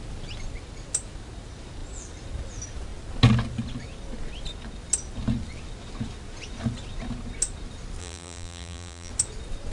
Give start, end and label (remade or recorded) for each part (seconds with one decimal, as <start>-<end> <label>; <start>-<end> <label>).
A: 0.0-8.0 recorded; 8.0-9.1 remade; 9.1-9.7 recorded